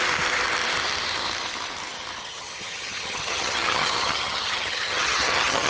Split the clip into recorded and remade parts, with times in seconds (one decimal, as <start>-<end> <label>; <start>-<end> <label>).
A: 0.0-2.2 recorded; 2.2-5.7 remade